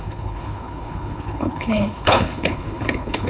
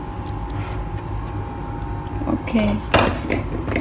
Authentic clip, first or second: second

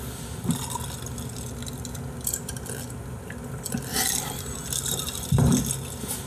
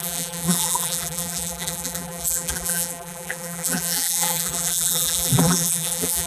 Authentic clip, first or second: first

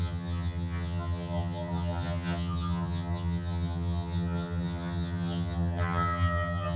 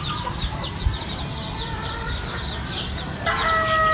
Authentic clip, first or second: second